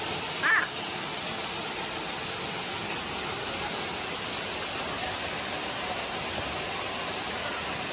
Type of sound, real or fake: real